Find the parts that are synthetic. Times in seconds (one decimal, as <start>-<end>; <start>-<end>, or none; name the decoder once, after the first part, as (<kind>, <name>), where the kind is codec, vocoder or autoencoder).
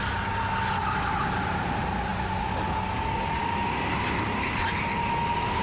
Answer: none